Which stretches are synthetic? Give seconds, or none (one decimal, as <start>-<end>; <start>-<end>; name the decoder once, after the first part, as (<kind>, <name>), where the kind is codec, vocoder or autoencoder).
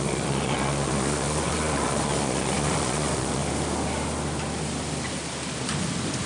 0.0-3.4 (vocoder, Vocos)